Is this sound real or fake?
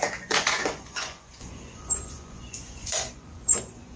fake